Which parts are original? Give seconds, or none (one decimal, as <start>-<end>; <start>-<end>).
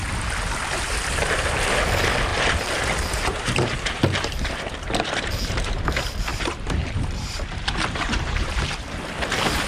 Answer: 0.0-2.3; 5.3-6.3; 8.6-9.7